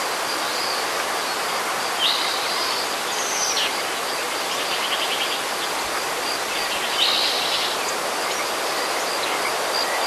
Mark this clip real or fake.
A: real